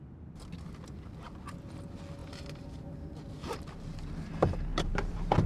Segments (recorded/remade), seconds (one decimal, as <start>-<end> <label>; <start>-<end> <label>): 0.0-2.2 recorded; 2.2-4.1 remade; 4.1-4.7 recorded; 4.7-5.5 remade